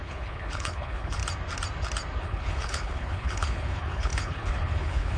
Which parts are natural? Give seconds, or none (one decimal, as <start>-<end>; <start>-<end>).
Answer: 1.2-2.2